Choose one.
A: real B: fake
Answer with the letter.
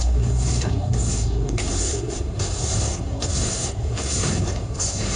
B